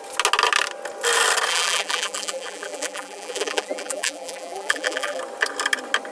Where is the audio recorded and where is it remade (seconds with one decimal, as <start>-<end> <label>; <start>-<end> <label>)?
0.0-1.5 recorded; 1.5-5.2 remade; 5.2-6.1 recorded

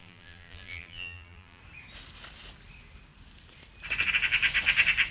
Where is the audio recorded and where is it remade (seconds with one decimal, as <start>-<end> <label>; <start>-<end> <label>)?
0.0-1.6 remade; 1.6-5.1 recorded

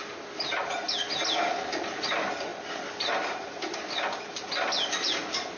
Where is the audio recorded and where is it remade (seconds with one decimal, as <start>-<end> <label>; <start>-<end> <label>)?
0.0-5.6 recorded